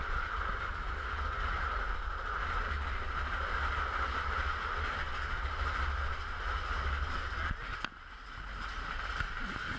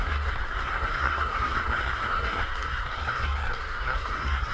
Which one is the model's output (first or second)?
second